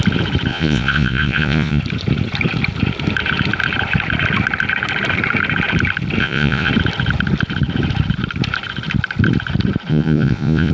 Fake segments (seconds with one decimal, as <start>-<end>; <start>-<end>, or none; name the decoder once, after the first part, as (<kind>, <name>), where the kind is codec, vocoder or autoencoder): 0.5-1.8 (vocoder, Vocos); 6.2-6.7; 9.9-10.7